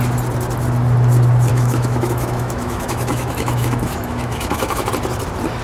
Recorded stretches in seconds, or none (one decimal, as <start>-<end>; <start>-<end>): 0.0-1.5; 4.9-5.6